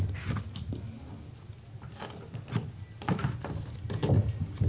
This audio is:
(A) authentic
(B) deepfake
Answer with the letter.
A